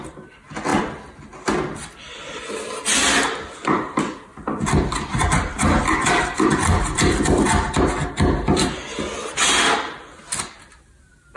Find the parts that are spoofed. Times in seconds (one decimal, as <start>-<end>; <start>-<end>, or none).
0.7-2.5; 4.3-7.8